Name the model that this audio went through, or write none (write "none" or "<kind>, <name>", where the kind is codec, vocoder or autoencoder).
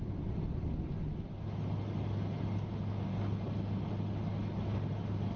none